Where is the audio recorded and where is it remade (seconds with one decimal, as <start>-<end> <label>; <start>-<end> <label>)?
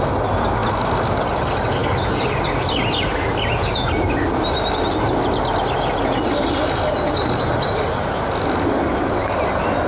0.0-9.9 recorded